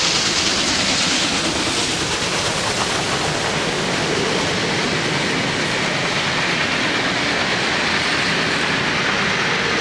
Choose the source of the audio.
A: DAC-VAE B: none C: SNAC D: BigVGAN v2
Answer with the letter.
B